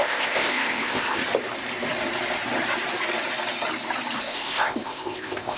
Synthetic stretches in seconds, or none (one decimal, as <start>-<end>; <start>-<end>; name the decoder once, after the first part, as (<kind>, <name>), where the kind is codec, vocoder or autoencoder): 0.0-1.2 (codec, ZipCodec); 4.2-5.6